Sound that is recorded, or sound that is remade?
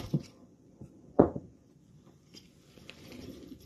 remade